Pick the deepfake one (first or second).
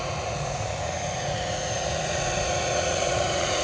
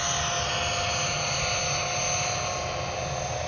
first